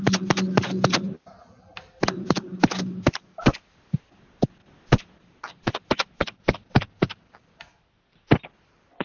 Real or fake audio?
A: real